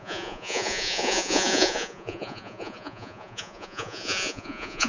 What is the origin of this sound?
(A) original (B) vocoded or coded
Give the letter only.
B